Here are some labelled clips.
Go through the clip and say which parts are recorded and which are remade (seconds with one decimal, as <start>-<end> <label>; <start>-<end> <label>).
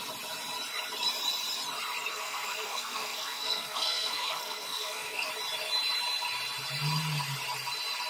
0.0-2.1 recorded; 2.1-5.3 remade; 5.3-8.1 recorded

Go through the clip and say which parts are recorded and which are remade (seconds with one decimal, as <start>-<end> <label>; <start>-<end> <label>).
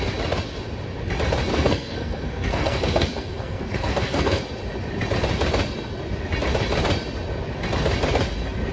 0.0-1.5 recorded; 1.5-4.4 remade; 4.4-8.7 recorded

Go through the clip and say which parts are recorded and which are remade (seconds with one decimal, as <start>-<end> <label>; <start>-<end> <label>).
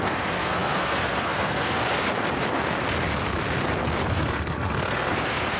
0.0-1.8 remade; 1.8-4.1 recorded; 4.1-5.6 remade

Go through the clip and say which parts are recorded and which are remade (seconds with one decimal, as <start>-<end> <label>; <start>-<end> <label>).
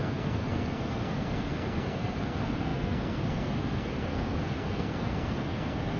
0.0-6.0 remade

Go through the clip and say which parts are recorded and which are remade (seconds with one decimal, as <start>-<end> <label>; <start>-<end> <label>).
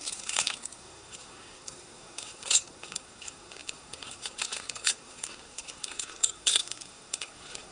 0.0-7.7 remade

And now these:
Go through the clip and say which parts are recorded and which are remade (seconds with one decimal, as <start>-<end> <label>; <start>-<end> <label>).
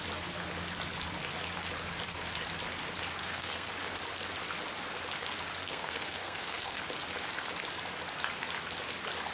0.0-3.2 recorded; 3.2-3.7 remade; 3.7-5.6 recorded; 5.6-6.8 remade; 6.8-9.3 recorded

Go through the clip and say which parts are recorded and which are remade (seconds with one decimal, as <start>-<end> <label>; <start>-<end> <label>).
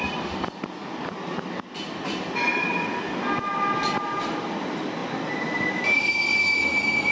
0.0-7.1 recorded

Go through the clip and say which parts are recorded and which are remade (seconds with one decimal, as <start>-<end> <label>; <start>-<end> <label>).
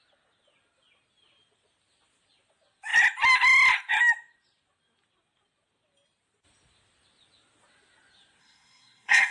0.0-8.4 recorded; 8.4-9.3 remade